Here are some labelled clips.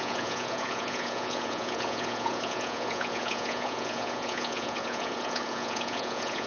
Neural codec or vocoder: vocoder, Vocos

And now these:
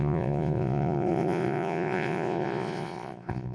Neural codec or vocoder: vocoder, Vocos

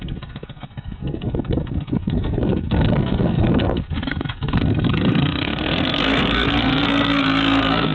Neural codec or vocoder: codec, SNAC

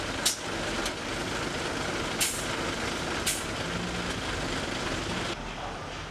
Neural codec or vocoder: none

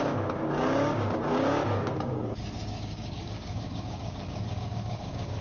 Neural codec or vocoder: codec, DAC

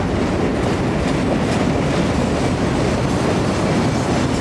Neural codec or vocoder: none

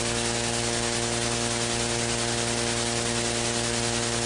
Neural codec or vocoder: none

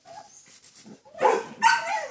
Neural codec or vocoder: none